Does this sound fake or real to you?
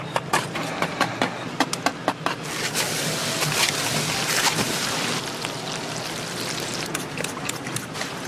real